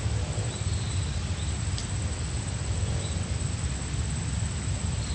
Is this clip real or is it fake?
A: real